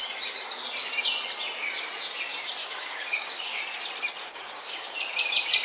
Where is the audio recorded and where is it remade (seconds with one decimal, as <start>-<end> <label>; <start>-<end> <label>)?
0.0-2.6 recorded; 2.6-3.6 remade; 3.6-4.2 recorded; 4.2-4.9 remade; 4.9-5.6 recorded